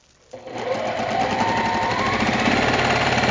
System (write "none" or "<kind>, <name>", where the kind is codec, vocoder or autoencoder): none